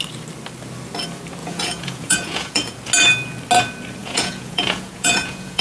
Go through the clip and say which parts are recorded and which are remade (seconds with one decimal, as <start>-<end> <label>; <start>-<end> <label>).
0.0-1.4 recorded; 1.4-2.8 remade; 2.8-4.0 recorded; 4.0-5.6 remade